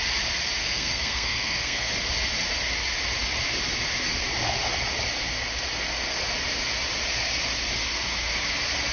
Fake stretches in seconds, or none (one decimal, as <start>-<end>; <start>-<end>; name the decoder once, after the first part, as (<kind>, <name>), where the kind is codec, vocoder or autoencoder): 0.6-1.9 (codec, SNAC)